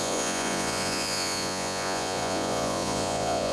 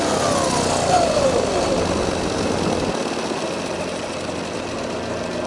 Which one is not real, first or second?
first